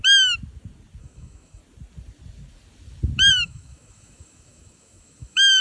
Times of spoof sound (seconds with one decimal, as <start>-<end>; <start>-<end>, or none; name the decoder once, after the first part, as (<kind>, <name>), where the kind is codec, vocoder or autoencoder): 1.0-1.6 (autoencoder, DAC-VAE); 3.3-5.6

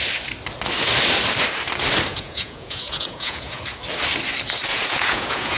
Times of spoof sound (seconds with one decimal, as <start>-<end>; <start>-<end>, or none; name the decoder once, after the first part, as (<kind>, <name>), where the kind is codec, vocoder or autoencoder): 2.1-3.6 (vocoder, Vocos); 4.7-5.6

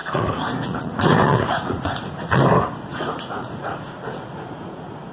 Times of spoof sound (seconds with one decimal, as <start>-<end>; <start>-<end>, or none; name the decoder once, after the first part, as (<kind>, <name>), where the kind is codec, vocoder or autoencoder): 0.0-2.4 (vocoder, Vocos); 2.9-5.1